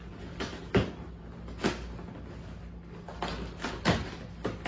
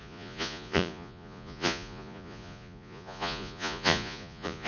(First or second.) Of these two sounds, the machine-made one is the second